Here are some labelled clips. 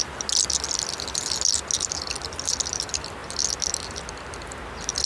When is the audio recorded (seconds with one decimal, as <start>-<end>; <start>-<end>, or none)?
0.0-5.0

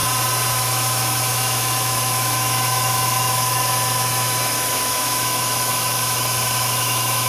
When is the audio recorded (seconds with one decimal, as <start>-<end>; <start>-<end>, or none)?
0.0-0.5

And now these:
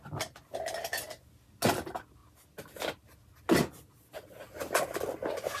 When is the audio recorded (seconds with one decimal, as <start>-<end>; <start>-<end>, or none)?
0.0-5.6

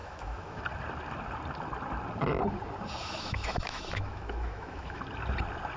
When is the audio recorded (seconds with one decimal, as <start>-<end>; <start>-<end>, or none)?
0.6-3.0; 5.0-5.8